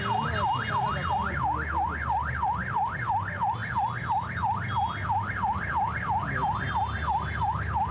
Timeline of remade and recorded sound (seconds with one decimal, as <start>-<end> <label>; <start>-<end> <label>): 0.0-7.9 recorded